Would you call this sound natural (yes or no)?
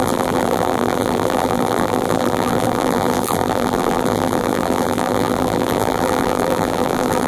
no